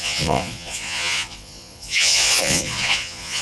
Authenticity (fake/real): fake